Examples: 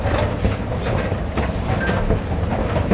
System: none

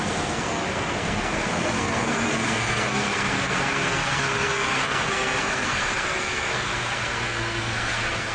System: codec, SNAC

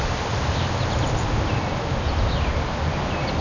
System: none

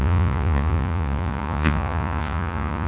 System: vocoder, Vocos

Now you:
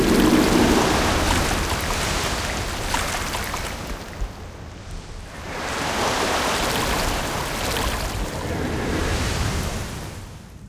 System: none